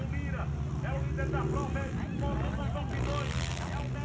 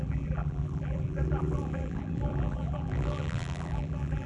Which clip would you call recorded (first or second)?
first